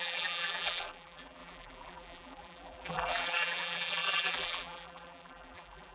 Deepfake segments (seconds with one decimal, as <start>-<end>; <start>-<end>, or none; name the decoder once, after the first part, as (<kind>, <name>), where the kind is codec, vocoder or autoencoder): 0.0-5.9 (vocoder, BigVGAN v2)